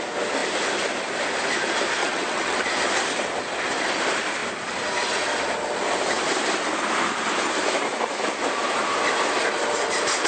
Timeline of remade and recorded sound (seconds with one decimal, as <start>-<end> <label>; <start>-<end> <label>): 0.0-2.0 recorded; 2.0-2.6 remade; 2.6-10.3 recorded